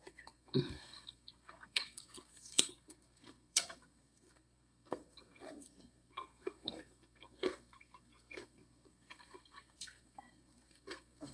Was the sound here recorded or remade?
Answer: remade